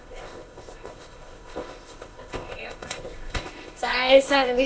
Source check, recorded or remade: remade